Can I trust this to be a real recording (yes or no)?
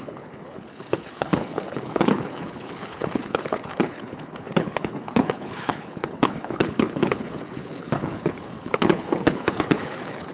no